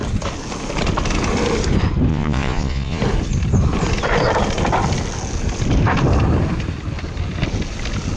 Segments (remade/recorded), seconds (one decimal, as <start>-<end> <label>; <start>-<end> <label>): 0.0-2.1 recorded; 2.1-3.0 remade; 3.0-8.2 recorded